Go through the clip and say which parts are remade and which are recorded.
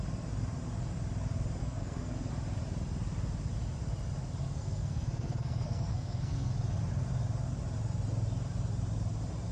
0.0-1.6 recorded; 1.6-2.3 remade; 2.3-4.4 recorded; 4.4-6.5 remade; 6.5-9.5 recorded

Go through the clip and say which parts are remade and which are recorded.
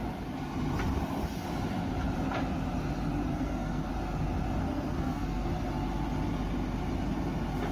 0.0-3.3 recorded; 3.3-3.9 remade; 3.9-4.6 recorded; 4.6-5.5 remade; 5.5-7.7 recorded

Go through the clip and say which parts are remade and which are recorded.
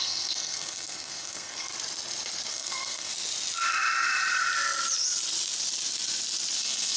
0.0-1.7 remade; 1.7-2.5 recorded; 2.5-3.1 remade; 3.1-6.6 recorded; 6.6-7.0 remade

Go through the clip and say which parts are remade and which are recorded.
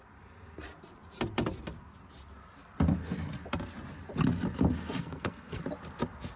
0.0-5.0 recorded; 5.0-5.6 remade; 5.6-6.4 recorded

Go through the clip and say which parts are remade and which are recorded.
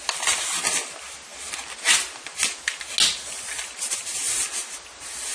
0.0-5.3 recorded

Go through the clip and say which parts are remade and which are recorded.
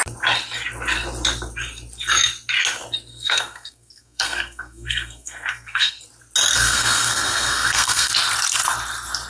0.0-3.1 recorded; 3.1-6.0 remade; 6.0-6.5 recorded; 6.5-8.1 remade; 8.1-9.3 recorded